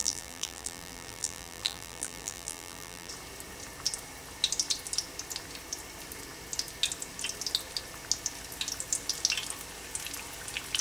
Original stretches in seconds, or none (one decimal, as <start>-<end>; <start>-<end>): 3.1-10.8